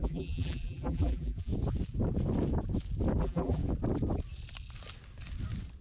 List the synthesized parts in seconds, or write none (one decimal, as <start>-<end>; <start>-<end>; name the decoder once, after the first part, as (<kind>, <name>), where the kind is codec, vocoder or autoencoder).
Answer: 0.0-1.5 (vocoder, BigVGAN v2); 3.2-3.6